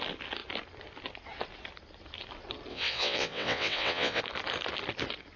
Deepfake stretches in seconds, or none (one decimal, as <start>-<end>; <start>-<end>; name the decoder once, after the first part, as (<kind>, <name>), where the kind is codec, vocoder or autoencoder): 2.7-4.2 (vocoder, WaveNeXt)